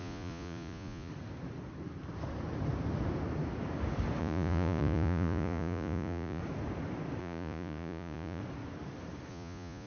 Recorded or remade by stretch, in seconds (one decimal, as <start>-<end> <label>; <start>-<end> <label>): 0.0-1.1 remade; 1.1-4.2 recorded; 4.2-6.4 remade; 6.4-7.2 recorded; 7.2-8.4 remade; 8.4-9.3 recorded; 9.3-9.9 remade